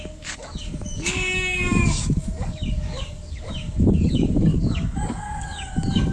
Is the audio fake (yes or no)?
yes